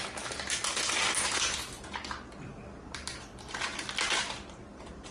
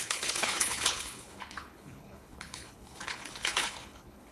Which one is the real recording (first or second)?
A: first